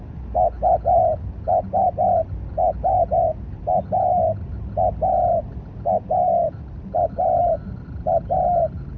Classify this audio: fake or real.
real